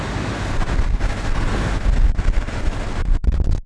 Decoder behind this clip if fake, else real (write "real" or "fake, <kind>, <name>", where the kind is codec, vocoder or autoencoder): real